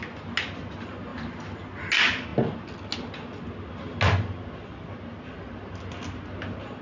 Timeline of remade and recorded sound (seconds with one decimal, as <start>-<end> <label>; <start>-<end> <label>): 0.0-6.8 recorded